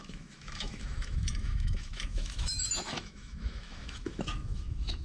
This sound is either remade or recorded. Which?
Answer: remade